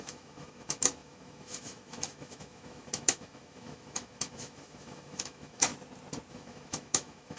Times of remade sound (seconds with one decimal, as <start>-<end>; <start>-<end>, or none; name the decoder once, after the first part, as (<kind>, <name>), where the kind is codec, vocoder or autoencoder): 0.0-5.7 (autoencoder, DAC-VAE); 6.3-7.4